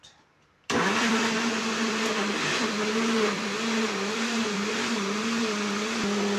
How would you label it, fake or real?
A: fake